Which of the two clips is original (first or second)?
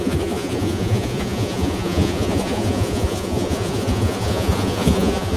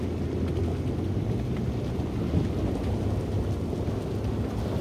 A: second